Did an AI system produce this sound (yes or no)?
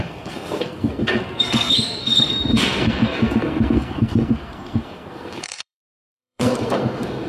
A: yes